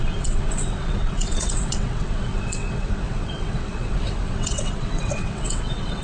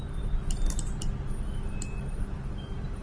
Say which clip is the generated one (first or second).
first